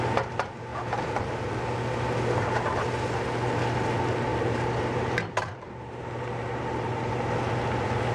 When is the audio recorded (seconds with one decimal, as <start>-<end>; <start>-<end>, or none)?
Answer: 0.0-0.7; 1.3-4.3; 6.0-8.1